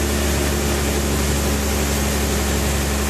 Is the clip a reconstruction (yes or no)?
no